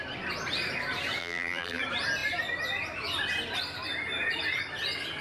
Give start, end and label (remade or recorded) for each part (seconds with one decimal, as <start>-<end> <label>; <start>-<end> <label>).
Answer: 0.0-1.2 recorded; 1.2-1.8 remade; 1.8-5.2 recorded

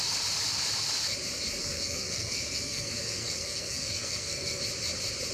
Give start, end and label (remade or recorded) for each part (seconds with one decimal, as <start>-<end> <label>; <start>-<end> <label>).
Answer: 0.0-1.6 recorded; 1.6-4.6 remade; 4.6-5.3 recorded

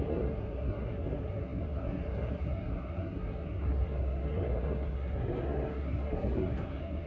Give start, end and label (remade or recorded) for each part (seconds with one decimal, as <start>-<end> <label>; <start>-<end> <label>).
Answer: 0.0-7.1 remade

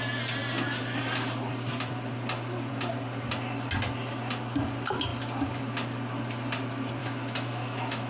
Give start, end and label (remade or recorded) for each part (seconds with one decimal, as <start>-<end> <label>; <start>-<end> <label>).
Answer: 0.0-7.0 recorded; 7.0-8.1 remade

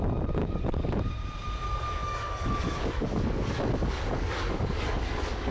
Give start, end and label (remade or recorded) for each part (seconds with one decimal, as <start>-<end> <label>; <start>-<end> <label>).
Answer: 0.0-0.4 recorded; 0.4-1.0 remade; 1.0-2.0 recorded; 2.0-5.5 remade